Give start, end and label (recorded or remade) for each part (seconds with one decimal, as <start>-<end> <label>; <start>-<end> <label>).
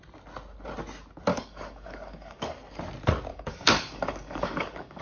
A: 0.0-1.3 recorded; 1.3-2.8 remade; 2.8-3.3 recorded; 3.3-5.0 remade